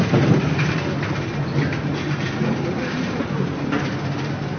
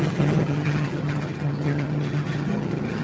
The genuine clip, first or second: first